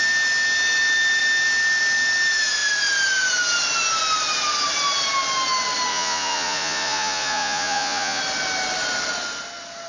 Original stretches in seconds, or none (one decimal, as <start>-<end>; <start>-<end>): 0.0-5.9; 8.2-9.9

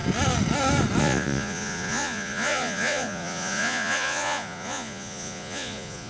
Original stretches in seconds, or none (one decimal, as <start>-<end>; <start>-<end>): 0.0-1.0